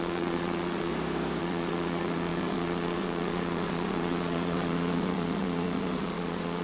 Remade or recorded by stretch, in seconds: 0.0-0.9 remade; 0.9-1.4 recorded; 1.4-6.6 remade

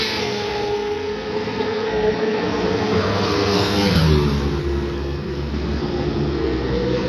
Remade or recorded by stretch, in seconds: 0.0-4.0 remade; 4.0-4.6 recorded; 4.6-7.1 remade

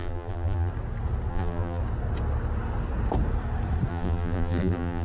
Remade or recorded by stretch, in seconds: 0.0-0.7 remade; 0.7-1.3 recorded; 1.3-1.8 remade; 1.8-3.9 recorded; 3.9-5.0 remade